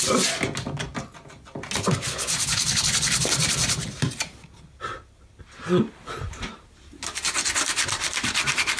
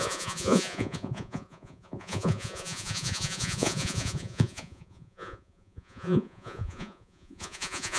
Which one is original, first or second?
first